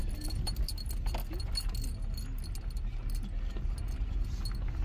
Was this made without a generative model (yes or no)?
yes